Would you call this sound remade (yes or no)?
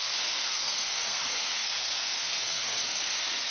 yes